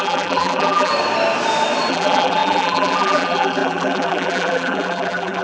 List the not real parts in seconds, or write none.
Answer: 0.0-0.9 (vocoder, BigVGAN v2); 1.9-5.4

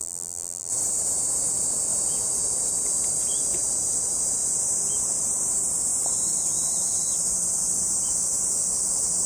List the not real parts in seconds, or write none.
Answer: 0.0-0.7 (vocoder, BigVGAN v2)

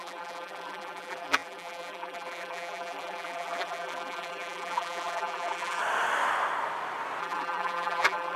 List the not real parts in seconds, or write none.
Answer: 0.0-5.8 (vocoder, BigVGAN v2); 7.2-8.4